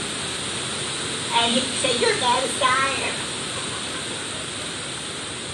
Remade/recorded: recorded